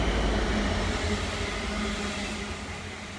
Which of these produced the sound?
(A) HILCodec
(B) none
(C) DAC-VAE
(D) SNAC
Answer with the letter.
B